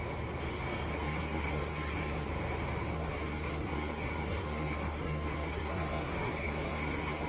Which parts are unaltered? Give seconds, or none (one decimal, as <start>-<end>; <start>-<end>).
0.0-0.9; 2.3-2.9